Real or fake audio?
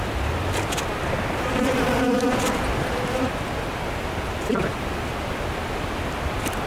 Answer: real